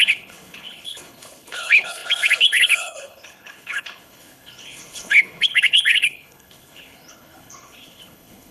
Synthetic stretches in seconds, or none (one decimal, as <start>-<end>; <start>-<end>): 0.0-8.5